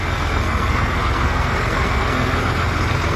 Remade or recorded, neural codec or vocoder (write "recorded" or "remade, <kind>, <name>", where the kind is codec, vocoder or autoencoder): remade, codec, SNAC